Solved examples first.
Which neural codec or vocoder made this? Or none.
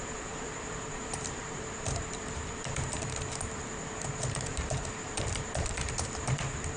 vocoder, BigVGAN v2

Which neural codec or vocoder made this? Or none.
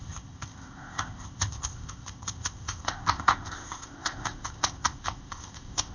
codec, ZipCodec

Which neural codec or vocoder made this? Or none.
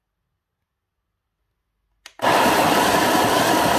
none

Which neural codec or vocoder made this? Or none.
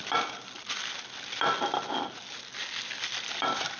none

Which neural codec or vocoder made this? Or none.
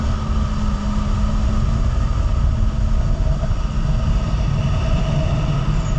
none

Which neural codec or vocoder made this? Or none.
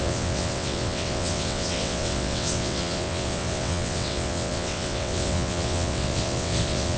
vocoder, WaveNeXt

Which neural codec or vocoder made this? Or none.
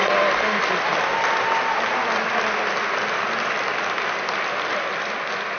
none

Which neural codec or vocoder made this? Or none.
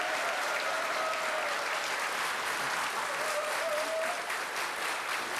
none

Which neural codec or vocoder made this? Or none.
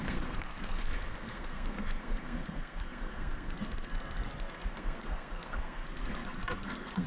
codec, SNAC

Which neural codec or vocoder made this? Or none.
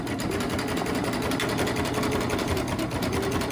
none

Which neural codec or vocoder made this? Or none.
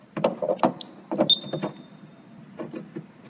none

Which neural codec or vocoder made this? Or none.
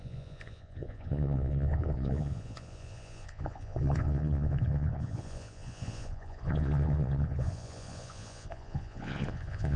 vocoder, Vocos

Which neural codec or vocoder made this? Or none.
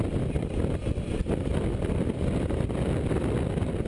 none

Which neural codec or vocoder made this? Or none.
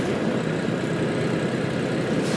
none